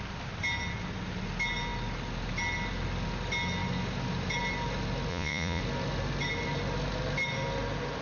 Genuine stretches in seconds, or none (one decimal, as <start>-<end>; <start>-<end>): 0.0-5.1; 5.6-8.0